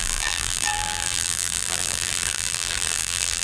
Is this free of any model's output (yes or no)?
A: no